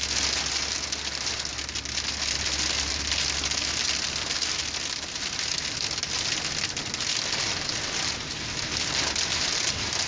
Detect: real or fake real